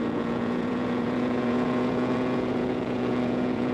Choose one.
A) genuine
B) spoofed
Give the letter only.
B